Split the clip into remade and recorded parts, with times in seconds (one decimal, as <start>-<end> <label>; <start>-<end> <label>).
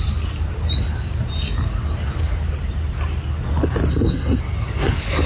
0.0-3.9 recorded; 3.9-4.4 remade; 4.4-5.3 recorded